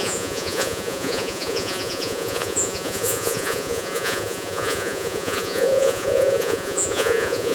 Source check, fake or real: fake